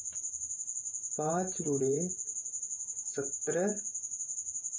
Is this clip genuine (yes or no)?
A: no